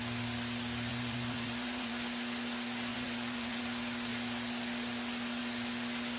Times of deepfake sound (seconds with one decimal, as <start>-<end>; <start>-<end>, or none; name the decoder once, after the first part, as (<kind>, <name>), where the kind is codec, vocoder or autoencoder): 0.9-1.9 (vocoder, Vocos); 2.9-3.6